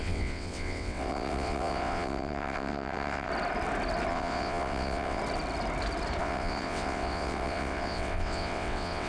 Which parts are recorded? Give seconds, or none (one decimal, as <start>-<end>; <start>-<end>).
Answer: 3.3-4.1; 5.2-6.2